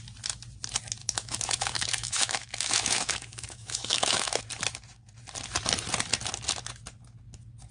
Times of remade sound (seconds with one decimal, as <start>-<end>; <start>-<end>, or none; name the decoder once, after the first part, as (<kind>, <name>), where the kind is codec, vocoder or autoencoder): 1.0-4.4 (autoencoder, DAC-VAE)